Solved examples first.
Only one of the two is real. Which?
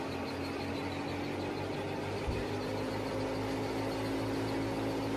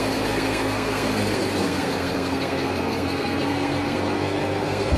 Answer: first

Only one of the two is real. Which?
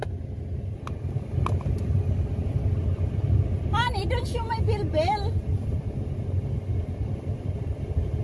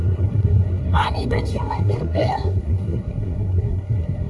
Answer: first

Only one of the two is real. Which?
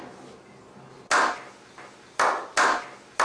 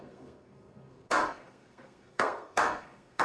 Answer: first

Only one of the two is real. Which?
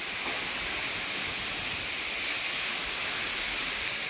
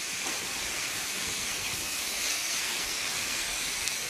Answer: first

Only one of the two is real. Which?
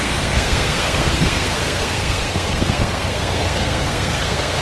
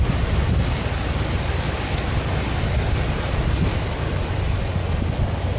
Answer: second